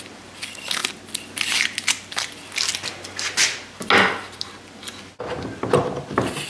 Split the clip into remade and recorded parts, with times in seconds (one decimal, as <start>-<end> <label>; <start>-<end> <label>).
0.0-6.5 recorded